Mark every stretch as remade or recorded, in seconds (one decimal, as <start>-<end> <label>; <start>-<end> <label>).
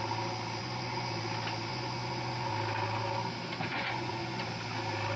0.0-0.6 recorded; 0.6-1.1 remade; 1.1-1.7 recorded; 1.7-2.5 remade; 2.5-3.7 recorded; 3.7-4.4 remade; 4.4-5.2 recorded